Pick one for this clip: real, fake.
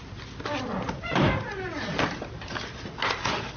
real